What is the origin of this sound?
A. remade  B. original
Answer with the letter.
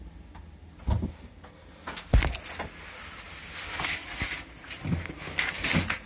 B